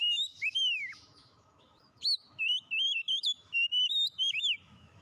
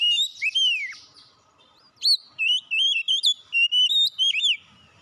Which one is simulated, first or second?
first